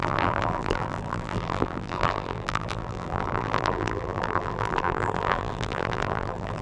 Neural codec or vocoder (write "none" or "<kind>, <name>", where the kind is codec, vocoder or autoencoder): vocoder, BigVGAN v2